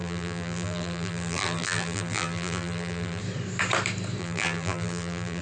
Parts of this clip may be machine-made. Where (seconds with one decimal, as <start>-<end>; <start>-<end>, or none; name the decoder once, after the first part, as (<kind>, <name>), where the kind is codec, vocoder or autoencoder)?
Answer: 0.0-3.2 (vocoder, BigVGAN v2); 4.2-5.4